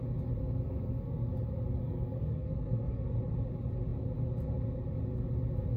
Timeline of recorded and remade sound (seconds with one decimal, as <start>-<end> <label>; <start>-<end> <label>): 0.0-0.4 recorded; 0.4-1.3 remade; 1.3-1.8 recorded; 1.8-3.1 remade; 3.1-5.8 recorded